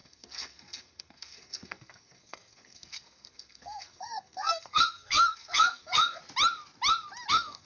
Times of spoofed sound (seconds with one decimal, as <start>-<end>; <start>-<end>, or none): 0.0-6.2; 7.3-7.7